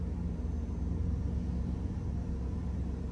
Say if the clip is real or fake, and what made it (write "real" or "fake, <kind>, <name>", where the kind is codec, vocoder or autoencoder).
real